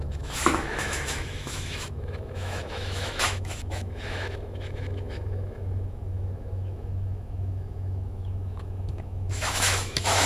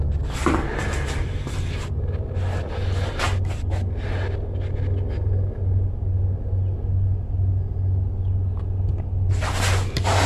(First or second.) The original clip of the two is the second